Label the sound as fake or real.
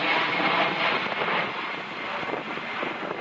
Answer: real